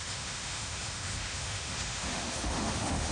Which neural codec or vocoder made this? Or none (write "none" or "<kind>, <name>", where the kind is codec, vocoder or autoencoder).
autoencoder, DAC-VAE